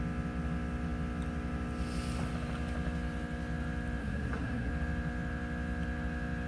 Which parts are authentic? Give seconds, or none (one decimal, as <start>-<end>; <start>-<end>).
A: 0.0-4.0; 4.7-6.5